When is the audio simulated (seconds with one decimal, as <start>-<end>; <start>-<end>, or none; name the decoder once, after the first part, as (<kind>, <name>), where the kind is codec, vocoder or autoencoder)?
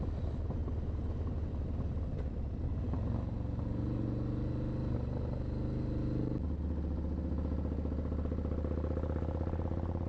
none